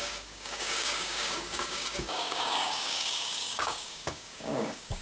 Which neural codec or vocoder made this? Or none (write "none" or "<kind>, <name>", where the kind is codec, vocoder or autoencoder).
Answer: codec, DAC